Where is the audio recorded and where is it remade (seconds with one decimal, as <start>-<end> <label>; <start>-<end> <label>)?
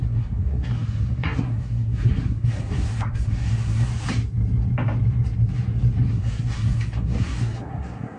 0.0-3.9 remade; 3.9-6.1 recorded; 6.1-8.2 remade